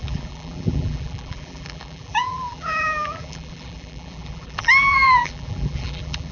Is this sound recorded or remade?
remade